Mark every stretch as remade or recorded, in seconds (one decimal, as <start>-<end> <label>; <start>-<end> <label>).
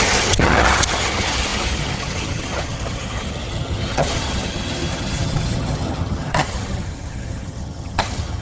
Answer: 0.0-8.4 remade